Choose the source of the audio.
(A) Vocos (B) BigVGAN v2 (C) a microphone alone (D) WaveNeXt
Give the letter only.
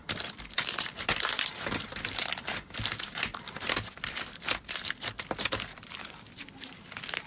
B